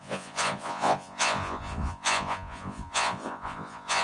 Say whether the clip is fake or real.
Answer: fake